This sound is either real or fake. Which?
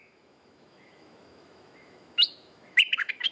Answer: fake